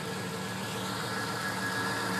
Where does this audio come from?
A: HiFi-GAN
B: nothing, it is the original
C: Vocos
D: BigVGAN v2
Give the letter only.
B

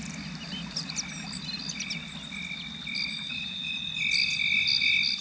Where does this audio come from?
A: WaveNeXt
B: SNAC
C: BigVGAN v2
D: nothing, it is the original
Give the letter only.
D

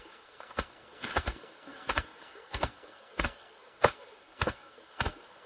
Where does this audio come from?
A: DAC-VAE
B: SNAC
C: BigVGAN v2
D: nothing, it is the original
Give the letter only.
B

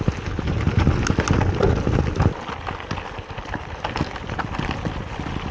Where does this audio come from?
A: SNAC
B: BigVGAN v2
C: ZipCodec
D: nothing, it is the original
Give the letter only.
D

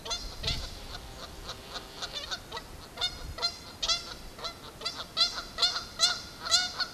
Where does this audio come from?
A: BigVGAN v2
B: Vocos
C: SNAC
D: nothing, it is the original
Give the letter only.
D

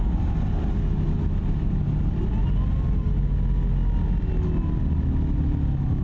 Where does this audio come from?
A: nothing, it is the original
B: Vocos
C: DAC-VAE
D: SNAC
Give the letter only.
A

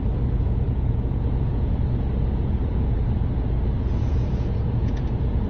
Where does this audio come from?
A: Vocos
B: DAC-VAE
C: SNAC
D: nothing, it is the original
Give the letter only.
A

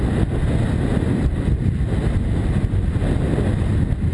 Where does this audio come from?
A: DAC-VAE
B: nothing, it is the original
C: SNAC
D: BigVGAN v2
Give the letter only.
B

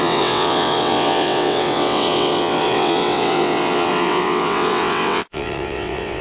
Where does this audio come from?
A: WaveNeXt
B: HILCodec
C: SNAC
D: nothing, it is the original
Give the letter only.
A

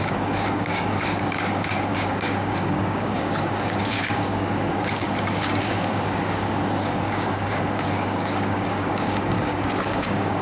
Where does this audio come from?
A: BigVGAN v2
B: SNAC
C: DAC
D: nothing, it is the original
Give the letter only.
C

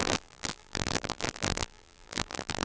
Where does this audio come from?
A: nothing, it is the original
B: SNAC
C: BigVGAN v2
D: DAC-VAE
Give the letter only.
C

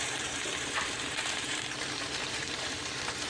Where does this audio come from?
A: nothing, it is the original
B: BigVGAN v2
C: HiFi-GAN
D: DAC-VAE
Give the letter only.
B